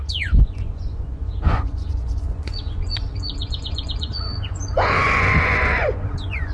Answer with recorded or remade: remade